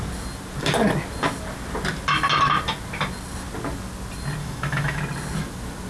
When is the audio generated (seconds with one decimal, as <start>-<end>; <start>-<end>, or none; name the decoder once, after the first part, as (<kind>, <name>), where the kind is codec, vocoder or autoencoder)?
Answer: 4.4-5.0 (autoencoder, DAC-VAE)